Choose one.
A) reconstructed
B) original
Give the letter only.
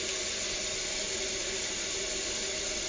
B